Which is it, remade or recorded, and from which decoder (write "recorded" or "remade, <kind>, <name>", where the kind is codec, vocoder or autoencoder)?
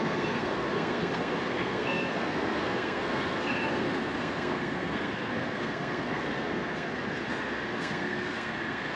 remade, codec, SNAC